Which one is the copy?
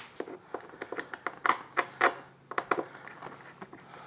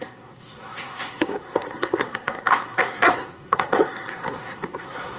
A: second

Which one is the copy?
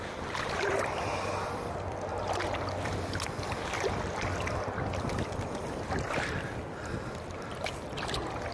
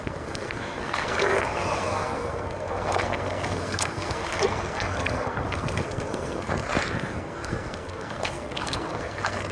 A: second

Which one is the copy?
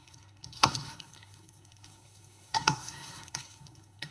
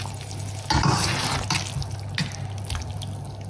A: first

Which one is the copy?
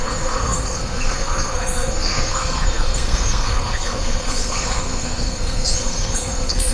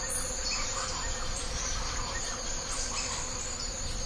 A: first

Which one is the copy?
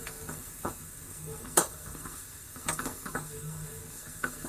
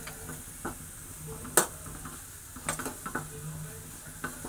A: first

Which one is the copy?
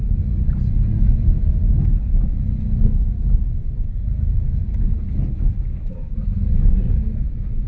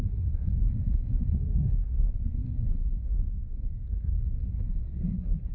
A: second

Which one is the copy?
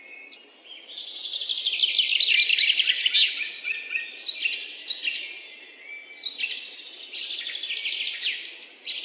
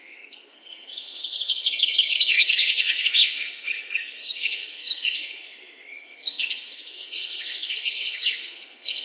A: second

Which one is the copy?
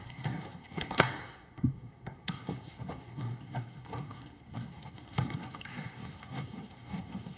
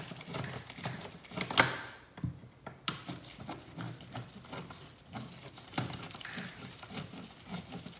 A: first